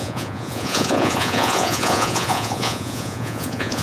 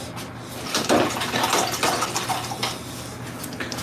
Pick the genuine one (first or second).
second